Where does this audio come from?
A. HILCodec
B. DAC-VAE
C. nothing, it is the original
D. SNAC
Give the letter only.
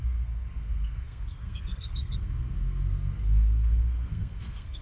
D